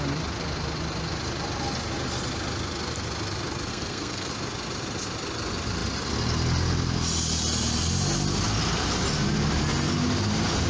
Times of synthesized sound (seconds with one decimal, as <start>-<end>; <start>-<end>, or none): 3.7-4.3